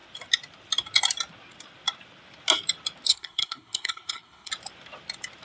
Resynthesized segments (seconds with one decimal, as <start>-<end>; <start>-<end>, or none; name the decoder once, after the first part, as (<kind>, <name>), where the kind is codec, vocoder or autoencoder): 3.1-4.5 (codec, HILCodec)